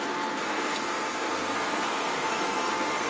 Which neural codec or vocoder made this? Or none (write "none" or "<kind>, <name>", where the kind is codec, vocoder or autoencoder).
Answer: codec, SNAC